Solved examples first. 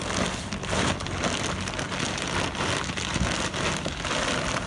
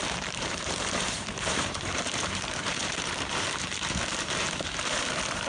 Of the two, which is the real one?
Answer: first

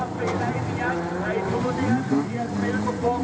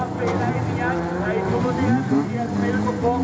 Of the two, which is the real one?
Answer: second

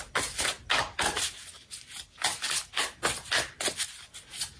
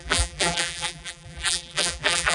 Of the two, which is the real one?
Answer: first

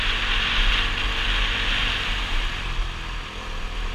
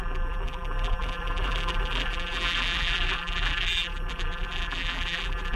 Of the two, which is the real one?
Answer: first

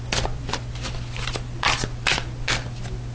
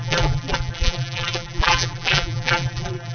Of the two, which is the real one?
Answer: first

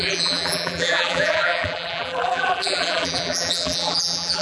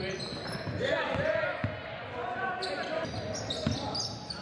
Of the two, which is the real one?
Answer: second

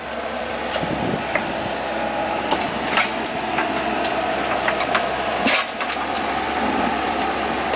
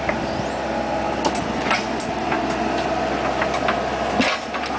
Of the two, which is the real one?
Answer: second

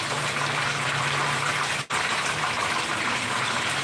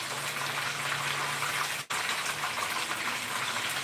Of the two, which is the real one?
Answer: second